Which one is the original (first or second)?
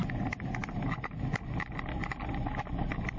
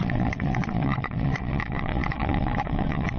first